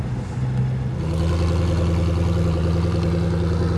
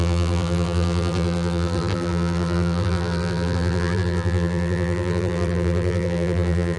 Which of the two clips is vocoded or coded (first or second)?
second